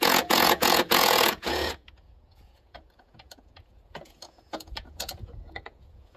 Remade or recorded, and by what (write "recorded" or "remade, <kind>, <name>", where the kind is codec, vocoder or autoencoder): remade, vocoder, Vocos